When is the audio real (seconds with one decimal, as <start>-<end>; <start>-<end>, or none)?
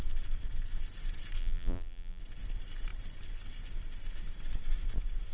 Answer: 0.0-1.4; 2.2-5.3